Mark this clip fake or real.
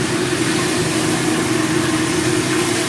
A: real